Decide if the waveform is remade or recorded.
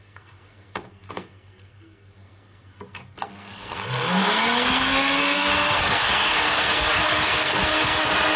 remade